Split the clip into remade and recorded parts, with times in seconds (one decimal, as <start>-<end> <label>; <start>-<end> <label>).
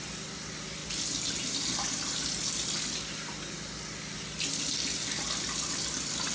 0.0-6.3 recorded